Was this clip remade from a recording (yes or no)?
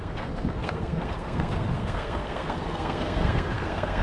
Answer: yes